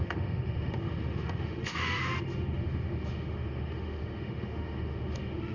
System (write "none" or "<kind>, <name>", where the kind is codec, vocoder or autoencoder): autoencoder, DAC-VAE